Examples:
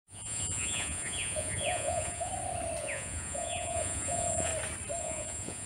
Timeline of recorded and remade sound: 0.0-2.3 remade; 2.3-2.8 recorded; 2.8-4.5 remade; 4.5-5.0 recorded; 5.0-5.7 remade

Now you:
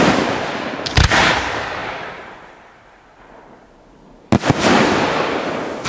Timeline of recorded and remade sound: 0.0-5.9 recorded

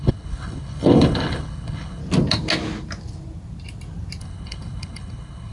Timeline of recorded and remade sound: 0.0-2.0 remade; 2.0-4.2 recorded; 4.2-5.5 remade

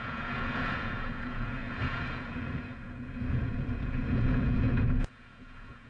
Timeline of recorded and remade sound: 0.0-5.9 remade

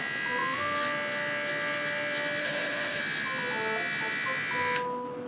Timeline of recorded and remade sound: 0.0-2.4 recorded; 2.4-3.0 remade; 3.0-5.3 recorded

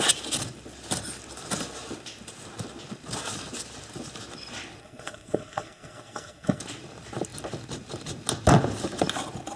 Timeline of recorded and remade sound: 0.0-4.8 recorded; 4.8-6.6 remade; 6.6-9.6 recorded

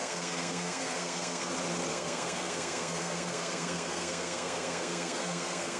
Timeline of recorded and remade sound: 0.0-1.5 remade; 1.5-1.9 recorded; 1.9-5.8 remade

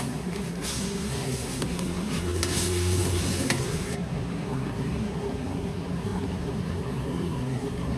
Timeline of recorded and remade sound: 0.0-8.0 remade